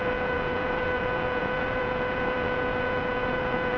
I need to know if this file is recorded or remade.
remade